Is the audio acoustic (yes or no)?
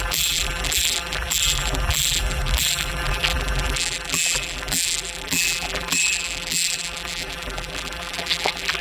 no